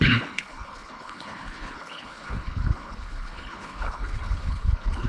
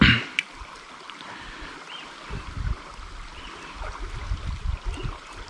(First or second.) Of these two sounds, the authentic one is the second